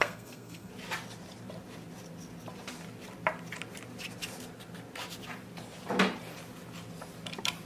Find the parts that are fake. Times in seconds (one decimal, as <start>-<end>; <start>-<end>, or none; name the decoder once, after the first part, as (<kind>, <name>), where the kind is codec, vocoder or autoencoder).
0.0-0.7 (codec, SNAC)